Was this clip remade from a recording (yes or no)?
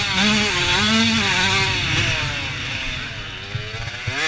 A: no